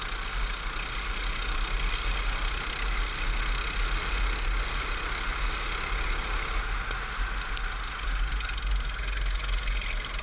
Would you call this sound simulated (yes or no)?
no